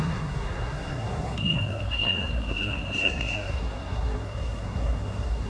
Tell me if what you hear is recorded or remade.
remade